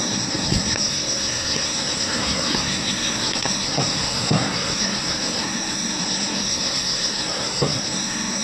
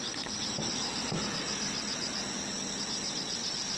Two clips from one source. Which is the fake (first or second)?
first